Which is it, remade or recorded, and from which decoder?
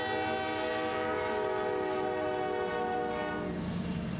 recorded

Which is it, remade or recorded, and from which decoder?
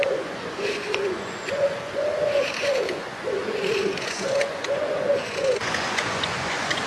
remade, vocoder, Vocos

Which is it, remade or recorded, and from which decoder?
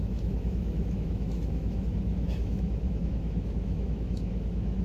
remade, autoencoder, DAC-VAE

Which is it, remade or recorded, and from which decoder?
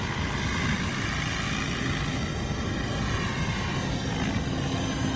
recorded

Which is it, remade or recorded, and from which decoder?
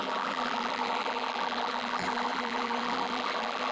remade, vocoder, BigVGAN v2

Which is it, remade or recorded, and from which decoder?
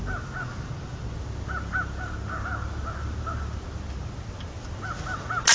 recorded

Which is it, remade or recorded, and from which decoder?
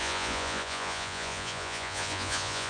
remade, vocoder, Vocos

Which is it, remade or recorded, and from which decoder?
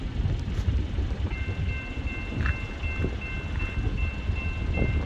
recorded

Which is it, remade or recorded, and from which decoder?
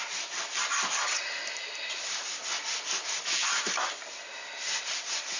recorded